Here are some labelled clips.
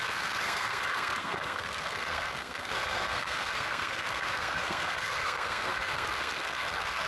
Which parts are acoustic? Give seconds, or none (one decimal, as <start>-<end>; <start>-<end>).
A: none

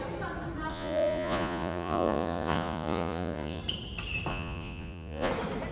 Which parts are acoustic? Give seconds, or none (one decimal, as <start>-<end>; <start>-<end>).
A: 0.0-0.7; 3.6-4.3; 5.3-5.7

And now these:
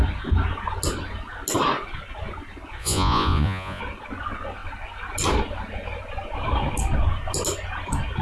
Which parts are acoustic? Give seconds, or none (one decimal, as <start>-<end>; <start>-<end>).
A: 0.0-2.8; 3.8-8.2

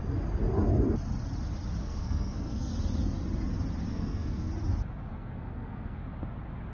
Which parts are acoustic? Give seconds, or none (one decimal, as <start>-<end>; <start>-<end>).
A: 0.0-1.8; 2.7-3.9; 4.5-5.1; 6.0-6.7

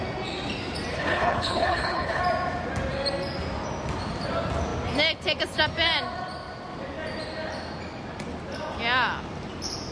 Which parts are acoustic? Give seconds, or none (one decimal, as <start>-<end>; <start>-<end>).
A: 0.0-0.9; 2.2-9.9

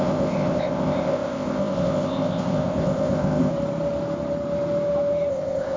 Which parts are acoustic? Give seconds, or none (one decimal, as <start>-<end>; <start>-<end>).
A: 3.5-5.3